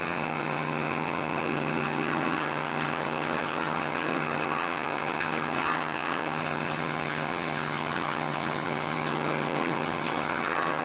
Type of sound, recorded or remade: remade